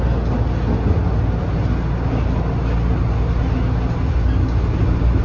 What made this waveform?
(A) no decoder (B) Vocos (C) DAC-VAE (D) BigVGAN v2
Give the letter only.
A